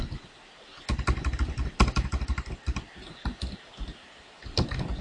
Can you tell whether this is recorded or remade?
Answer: recorded